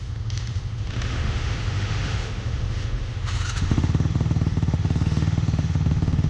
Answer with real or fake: fake